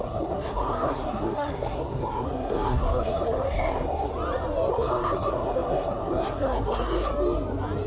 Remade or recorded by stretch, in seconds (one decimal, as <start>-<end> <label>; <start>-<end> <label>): 0.0-4.1 remade; 4.1-4.7 recorded; 4.7-7.1 remade; 7.1-7.9 recorded